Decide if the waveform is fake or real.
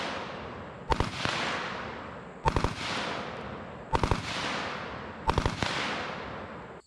real